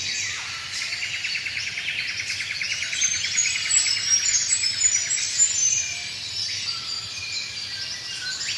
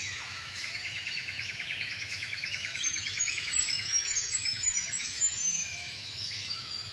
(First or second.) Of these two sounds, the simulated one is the second